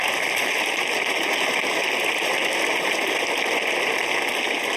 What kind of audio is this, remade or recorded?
recorded